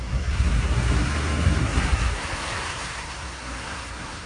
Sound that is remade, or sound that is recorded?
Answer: remade